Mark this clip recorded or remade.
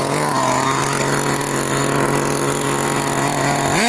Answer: recorded